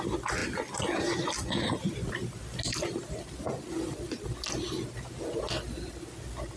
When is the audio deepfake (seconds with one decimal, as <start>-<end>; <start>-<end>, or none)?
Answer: none